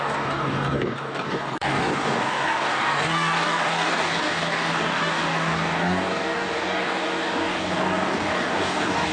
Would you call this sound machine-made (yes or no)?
yes